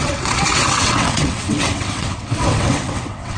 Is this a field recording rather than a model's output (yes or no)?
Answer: no